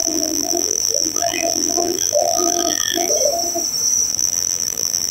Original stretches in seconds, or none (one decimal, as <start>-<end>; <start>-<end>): 3.1-4.1